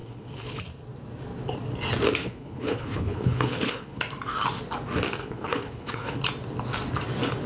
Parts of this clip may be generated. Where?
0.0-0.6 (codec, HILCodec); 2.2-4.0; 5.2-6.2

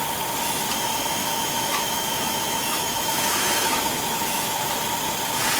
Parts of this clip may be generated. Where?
1.2-4.6 (autoencoder, DAC-VAE)

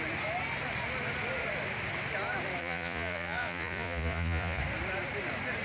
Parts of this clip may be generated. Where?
2.6-4.6 (vocoder, Vocos)

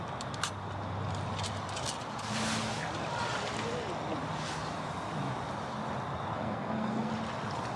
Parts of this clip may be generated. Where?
6.3-7.1 (codec, SNAC)

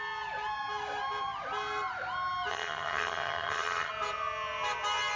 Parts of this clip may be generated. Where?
2.5-3.9 (vocoder, HiFi-GAN)

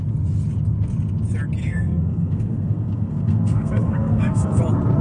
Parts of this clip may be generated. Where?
1.6-4.6 (codec, SNAC)

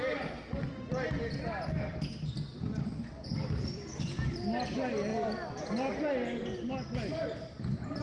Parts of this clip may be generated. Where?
none

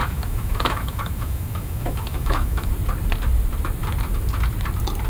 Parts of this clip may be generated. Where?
0.0-2.7 (autoencoder, DAC-VAE)